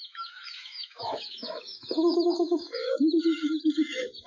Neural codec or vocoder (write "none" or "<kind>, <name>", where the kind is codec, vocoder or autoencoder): autoencoder, DAC-VAE